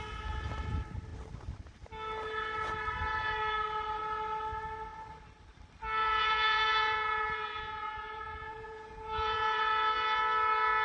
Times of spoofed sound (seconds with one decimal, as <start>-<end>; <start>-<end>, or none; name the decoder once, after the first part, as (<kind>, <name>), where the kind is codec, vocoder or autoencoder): 6.0-9.6 (vocoder, Vocos)